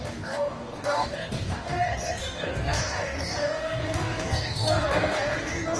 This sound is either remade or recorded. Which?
remade